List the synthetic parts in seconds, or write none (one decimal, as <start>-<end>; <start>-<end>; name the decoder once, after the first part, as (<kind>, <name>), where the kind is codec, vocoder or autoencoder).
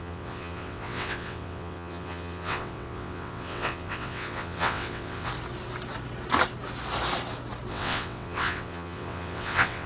0.0-5.3 (vocoder, WaveNeXt); 7.7-9.9